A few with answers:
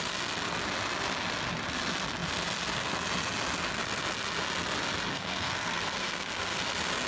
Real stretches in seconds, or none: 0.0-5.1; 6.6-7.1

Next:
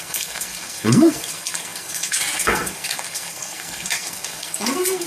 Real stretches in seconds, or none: none